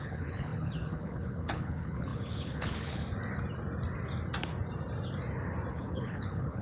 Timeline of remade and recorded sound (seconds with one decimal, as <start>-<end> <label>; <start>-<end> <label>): 0.0-3.0 remade; 3.0-5.7 recorded; 5.7-6.6 remade